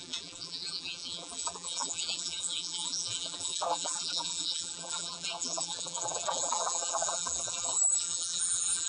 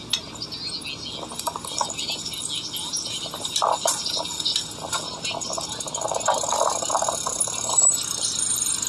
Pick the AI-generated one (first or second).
first